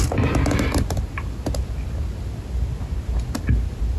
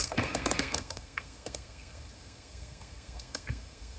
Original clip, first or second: first